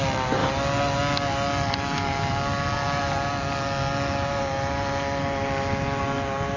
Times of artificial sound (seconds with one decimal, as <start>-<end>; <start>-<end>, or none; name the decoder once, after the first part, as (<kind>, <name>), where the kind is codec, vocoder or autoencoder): none